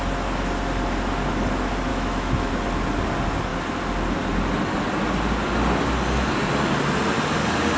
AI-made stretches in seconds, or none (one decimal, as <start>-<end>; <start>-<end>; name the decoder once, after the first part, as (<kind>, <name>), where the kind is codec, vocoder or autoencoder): 1.9-2.5 (autoencoder, DAC-VAE)